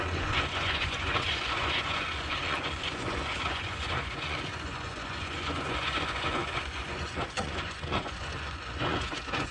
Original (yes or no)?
no